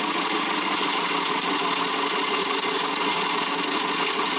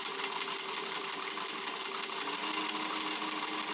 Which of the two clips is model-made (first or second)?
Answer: first